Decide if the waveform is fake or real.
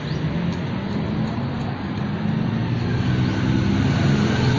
real